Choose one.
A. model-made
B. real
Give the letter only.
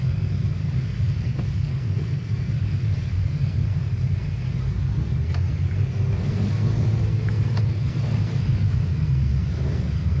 A